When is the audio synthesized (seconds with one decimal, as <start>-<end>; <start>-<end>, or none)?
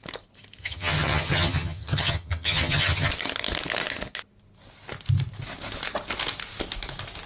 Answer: 0.6-3.1